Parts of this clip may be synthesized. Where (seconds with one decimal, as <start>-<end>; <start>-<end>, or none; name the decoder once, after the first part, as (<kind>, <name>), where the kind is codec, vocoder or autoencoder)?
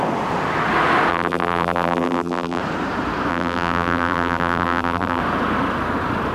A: 1.1-2.6 (vocoder, BigVGAN v2); 3.3-5.2